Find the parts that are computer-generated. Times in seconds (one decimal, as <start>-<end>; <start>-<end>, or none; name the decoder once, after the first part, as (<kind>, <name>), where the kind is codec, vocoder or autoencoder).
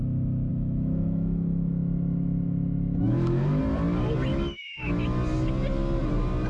0.5-3.6 (autoencoder, DAC-VAE); 4.3-4.9